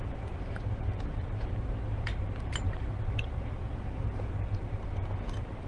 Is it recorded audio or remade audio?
remade